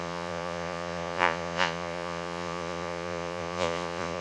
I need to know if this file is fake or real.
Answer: fake